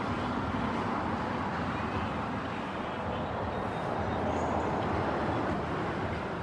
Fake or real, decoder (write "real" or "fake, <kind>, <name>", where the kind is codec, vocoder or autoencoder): real